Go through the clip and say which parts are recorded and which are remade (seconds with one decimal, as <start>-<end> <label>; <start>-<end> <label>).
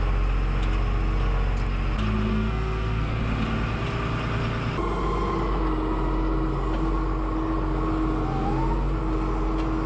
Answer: 0.0-2.3 recorded; 2.3-3.2 remade; 3.2-9.9 recorded